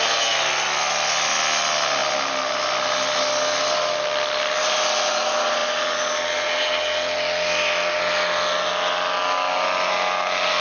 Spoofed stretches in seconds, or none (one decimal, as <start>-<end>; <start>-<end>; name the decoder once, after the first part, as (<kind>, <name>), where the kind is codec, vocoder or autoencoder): none